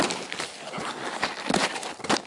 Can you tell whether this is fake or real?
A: real